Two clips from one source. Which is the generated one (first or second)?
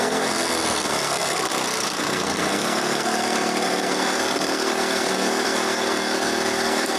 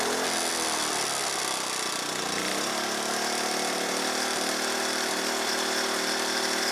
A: first